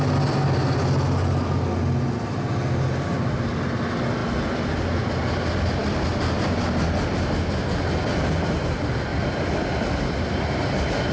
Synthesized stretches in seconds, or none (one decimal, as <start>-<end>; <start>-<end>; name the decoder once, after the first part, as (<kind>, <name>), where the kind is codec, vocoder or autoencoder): none